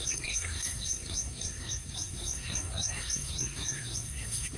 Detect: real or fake fake